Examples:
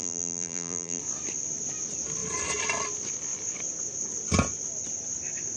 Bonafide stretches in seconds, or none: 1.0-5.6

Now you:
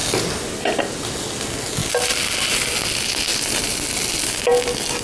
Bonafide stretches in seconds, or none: 0.0-5.0

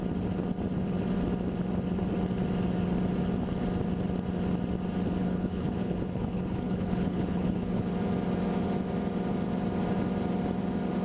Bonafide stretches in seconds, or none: 0.0-5.2; 7.9-11.0